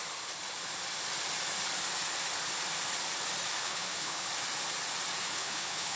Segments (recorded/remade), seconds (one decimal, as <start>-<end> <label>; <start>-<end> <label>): 0.0-3.6 recorded; 3.6-4.3 remade; 4.3-5.2 recorded; 5.2-6.0 remade